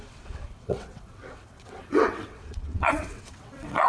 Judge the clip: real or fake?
fake